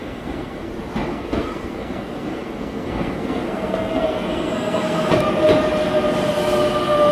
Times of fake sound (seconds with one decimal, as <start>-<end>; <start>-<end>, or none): 0.0-0.7; 1.1-5.2